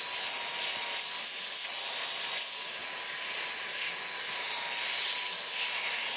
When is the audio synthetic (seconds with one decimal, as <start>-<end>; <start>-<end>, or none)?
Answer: none